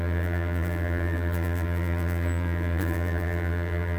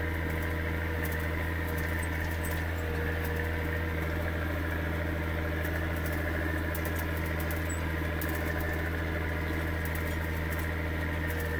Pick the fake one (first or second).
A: first